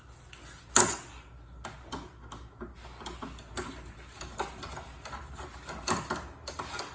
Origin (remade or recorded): recorded